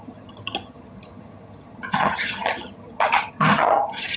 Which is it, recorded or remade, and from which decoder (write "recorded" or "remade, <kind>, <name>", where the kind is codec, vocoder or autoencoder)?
remade, vocoder, HiFi-GAN